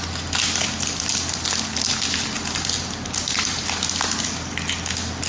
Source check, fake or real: real